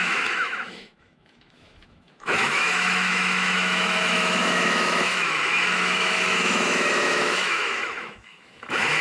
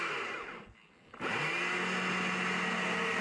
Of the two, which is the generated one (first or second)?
first